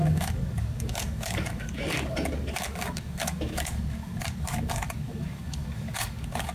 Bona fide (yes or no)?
no